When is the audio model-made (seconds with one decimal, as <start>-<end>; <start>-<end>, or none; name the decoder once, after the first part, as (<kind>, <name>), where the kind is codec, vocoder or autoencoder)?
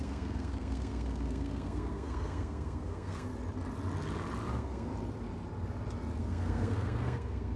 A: 0.0-3.3 (codec, SNAC); 4.5-4.9; 6.2-7.6